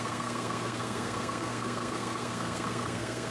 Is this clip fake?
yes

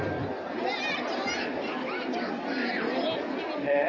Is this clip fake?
no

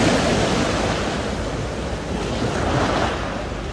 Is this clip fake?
no